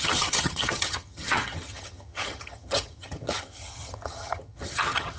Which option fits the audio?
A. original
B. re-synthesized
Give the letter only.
B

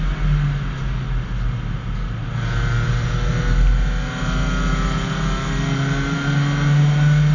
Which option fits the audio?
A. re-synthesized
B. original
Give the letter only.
B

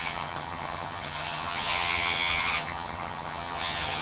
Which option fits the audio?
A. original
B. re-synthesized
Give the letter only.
B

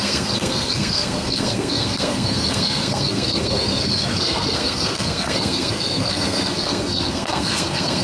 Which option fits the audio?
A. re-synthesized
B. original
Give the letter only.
A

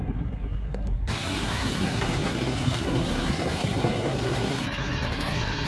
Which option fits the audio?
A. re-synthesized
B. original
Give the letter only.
A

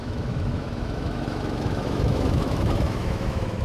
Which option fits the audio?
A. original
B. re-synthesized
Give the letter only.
B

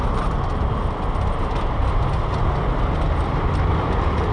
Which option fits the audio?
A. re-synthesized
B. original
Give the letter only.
B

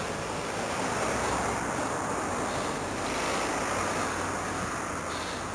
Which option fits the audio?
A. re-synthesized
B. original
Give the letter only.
B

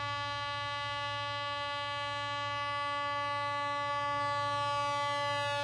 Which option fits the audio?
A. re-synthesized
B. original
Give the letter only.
B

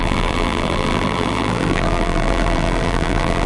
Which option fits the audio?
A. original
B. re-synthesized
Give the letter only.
B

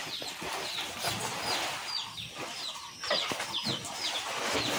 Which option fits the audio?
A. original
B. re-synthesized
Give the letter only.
A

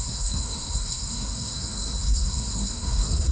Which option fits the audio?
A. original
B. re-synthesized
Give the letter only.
B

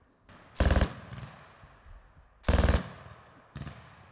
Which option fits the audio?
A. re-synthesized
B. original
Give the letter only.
B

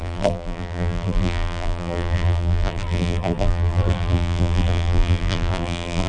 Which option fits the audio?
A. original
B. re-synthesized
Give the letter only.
B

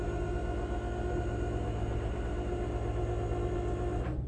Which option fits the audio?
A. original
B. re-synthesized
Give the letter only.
A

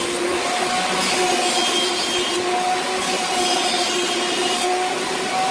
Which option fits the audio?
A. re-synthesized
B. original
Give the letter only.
B